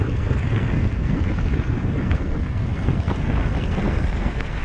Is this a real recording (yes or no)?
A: no